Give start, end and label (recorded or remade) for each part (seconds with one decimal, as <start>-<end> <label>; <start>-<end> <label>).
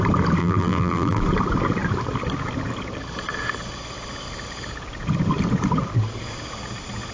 0.0-0.4 recorded; 0.4-1.2 remade; 1.2-7.1 recorded